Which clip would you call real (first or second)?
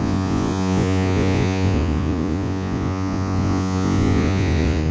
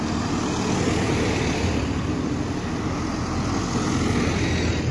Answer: second